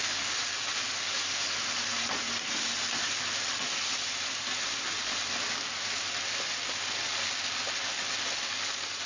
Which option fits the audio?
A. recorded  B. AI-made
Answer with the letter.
A